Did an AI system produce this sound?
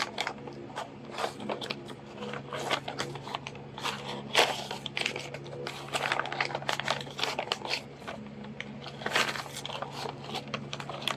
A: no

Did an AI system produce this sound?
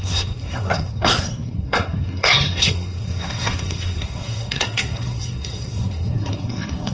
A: yes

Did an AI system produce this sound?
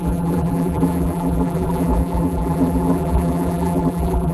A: yes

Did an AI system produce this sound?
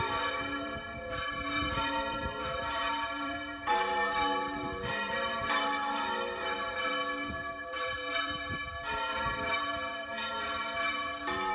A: yes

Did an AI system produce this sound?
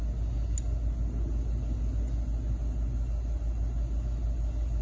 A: no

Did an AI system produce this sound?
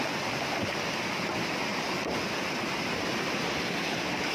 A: no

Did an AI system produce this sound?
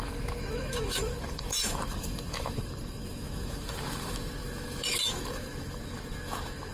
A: yes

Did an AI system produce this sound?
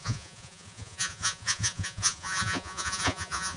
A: yes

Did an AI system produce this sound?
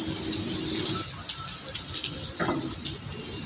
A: no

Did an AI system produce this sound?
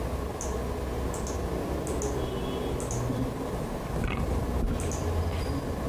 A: no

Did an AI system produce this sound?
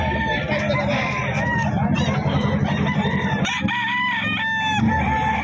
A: no